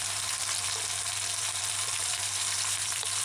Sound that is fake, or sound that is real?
fake